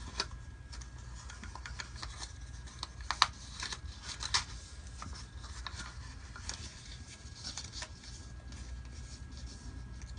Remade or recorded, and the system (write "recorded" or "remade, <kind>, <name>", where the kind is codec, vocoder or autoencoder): recorded